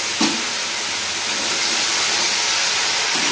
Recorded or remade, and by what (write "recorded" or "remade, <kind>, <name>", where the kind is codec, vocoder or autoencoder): recorded